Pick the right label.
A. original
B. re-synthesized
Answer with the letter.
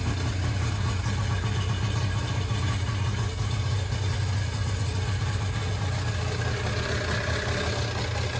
A